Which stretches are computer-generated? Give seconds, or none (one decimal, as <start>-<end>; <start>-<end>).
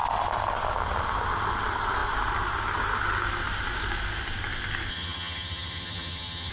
4.9-6.5